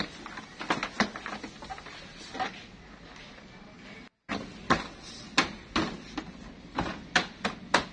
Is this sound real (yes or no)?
yes